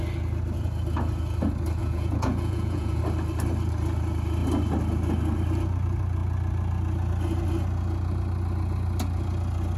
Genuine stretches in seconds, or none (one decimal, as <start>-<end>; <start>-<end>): 0.0-1.8; 3.0-9.8